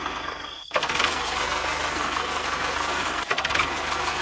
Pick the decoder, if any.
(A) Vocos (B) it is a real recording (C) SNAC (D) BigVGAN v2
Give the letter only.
C